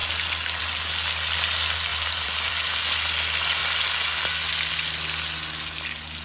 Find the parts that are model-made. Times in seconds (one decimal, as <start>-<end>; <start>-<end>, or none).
1.9-2.5